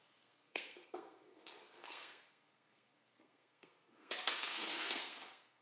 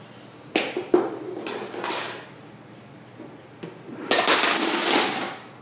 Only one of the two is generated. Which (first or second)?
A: first